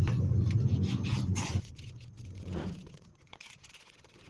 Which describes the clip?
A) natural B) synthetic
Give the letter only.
B